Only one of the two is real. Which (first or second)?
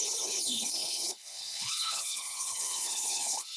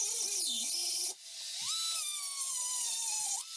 second